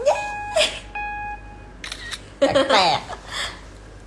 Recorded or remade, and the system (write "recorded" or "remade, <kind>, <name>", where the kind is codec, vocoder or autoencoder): recorded